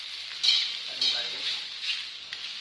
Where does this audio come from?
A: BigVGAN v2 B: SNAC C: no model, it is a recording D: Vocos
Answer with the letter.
C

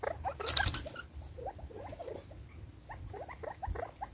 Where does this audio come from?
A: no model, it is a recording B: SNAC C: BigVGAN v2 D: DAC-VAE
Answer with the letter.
A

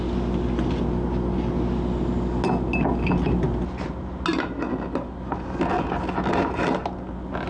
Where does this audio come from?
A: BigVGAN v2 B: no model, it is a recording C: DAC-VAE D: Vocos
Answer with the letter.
B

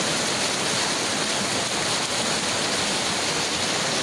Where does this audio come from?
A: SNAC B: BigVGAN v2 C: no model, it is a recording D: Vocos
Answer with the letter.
C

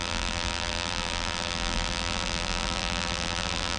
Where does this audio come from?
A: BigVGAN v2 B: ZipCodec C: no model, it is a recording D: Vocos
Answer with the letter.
A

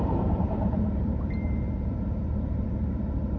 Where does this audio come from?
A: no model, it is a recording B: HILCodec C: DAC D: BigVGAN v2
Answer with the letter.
D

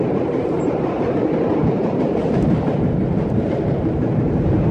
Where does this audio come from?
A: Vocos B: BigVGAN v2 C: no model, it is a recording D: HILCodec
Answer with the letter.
B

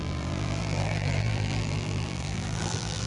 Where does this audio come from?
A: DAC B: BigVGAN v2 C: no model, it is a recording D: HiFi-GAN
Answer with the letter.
B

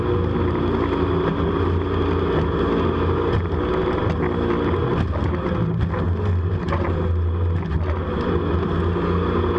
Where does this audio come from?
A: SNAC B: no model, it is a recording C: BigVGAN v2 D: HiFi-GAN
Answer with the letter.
B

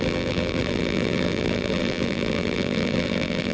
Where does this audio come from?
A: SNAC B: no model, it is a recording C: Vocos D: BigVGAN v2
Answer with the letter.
D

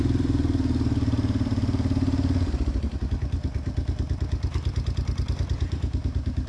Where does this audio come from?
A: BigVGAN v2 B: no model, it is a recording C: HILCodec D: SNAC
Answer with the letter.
A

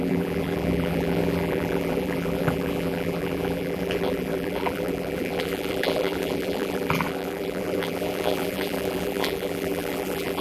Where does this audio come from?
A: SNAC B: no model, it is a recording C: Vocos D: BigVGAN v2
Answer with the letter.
D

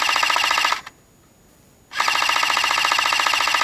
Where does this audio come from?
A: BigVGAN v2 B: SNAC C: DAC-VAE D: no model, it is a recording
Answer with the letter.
D